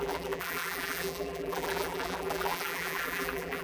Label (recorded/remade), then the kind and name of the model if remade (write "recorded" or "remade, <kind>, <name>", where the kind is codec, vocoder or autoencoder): remade, vocoder, BigVGAN v2